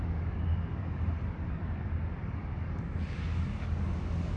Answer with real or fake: fake